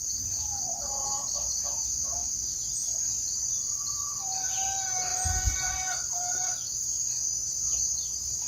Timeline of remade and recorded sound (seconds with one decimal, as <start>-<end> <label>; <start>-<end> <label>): 0.0-2.2 remade; 2.2-3.0 recorded; 3.0-8.5 remade